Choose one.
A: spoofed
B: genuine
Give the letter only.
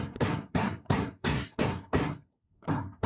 A